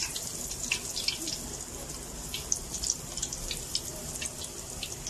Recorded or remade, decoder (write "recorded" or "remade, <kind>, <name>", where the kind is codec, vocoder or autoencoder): recorded